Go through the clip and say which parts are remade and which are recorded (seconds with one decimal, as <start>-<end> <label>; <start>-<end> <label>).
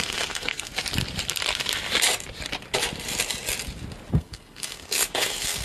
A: 0.0-0.7 remade; 0.7-4.1 recorded; 4.1-5.6 remade